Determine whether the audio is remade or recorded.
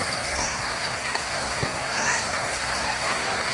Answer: remade